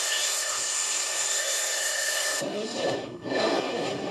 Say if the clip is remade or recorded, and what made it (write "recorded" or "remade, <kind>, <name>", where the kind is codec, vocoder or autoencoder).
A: remade, codec, SNAC